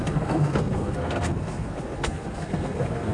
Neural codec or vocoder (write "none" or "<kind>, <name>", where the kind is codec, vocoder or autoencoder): codec, SNAC